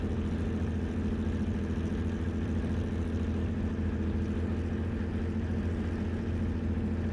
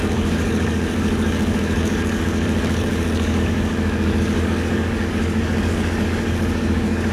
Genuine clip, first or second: first